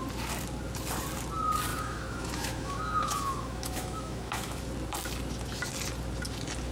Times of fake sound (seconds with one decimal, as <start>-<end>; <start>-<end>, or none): 1.7-4.6